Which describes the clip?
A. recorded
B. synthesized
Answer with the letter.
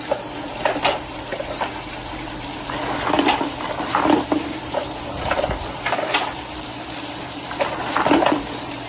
B